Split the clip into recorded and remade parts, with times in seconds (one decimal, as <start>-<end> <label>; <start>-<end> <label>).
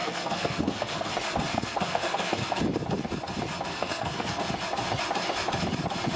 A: 0.0-1.1 remade; 1.1-1.5 recorded; 1.5-2.6 remade; 2.6-3.7 recorded; 3.7-4.4 remade; 4.4-6.2 recorded